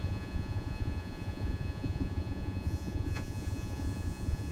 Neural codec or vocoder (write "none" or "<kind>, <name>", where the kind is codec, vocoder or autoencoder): vocoder, Vocos